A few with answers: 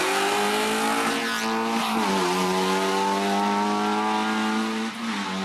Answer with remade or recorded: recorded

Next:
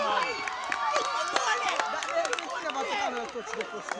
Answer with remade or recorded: recorded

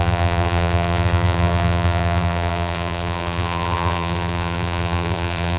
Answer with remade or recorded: remade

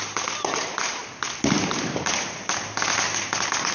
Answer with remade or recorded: remade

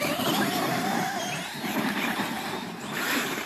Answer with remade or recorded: remade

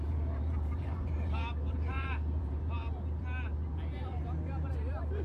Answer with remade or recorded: remade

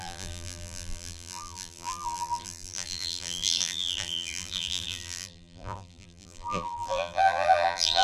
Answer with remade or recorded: remade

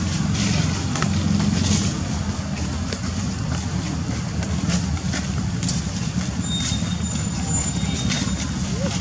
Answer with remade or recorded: recorded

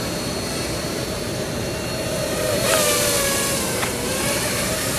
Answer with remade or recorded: remade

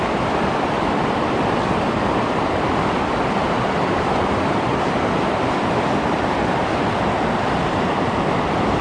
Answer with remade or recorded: remade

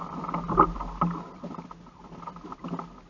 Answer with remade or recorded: recorded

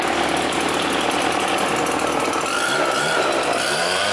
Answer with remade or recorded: remade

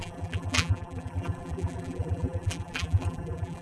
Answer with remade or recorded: remade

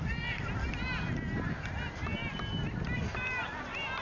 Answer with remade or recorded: recorded